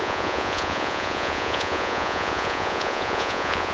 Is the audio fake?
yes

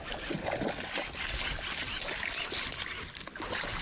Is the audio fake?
no